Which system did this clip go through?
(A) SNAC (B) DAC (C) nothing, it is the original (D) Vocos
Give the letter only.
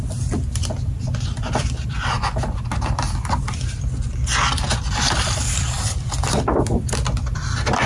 C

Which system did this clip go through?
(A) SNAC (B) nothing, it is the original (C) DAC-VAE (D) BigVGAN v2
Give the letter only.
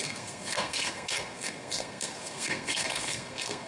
A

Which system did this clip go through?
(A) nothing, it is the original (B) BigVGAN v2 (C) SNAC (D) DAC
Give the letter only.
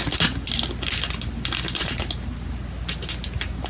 A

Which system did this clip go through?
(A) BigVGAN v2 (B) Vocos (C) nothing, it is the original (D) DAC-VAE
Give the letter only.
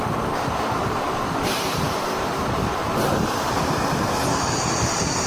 A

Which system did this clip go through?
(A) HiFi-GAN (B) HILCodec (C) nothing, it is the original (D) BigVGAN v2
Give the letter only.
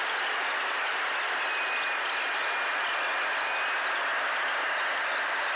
C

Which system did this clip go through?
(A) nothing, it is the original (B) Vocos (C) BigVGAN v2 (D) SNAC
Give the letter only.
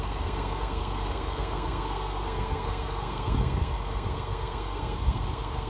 D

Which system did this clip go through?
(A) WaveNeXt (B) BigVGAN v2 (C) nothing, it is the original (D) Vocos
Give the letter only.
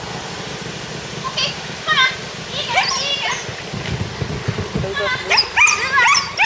C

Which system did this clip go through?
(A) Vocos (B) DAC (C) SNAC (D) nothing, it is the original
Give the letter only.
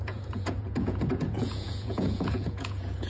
A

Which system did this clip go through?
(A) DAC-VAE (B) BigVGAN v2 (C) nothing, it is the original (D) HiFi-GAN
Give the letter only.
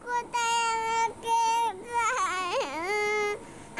C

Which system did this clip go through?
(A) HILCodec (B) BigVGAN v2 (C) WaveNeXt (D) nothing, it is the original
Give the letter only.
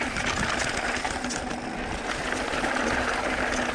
D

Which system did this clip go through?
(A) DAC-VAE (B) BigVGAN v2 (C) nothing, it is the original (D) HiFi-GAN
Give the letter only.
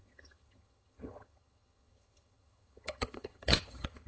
D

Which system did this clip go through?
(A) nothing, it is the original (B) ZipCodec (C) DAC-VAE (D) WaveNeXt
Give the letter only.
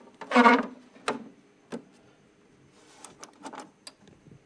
A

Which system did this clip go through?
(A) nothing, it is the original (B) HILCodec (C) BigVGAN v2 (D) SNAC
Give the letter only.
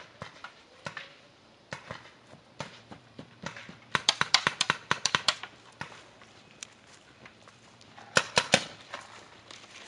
C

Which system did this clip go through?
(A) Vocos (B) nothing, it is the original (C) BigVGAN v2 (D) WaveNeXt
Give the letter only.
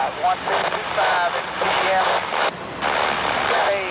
B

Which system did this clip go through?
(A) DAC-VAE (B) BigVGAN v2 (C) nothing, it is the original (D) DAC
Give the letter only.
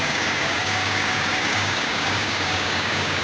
D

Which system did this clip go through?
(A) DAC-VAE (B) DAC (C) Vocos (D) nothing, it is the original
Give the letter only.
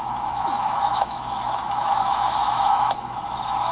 A